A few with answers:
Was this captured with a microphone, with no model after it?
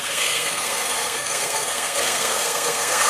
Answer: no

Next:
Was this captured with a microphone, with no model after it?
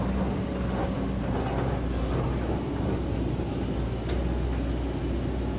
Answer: yes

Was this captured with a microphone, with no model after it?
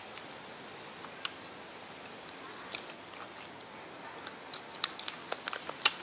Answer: yes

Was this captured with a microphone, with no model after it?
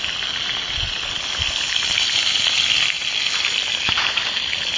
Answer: yes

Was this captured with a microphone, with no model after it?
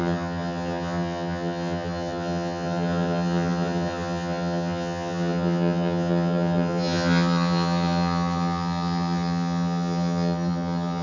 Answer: no